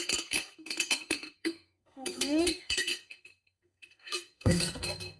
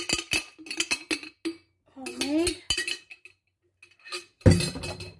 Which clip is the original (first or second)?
second